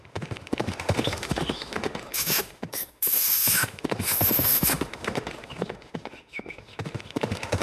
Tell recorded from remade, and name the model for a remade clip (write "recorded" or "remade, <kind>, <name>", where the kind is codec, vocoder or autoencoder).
remade, autoencoder, DAC-VAE